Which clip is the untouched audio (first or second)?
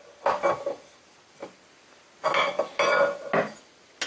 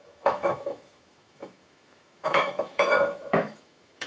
first